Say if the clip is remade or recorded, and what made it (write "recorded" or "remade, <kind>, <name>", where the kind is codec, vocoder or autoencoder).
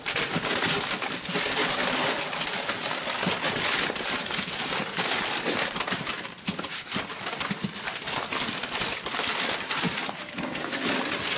recorded